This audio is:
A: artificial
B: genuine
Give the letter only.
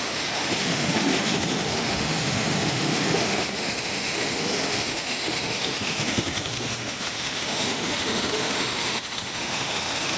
A